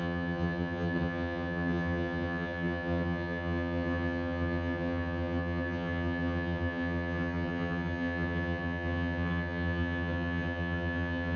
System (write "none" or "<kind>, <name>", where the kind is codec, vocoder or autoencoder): vocoder, HiFi-GAN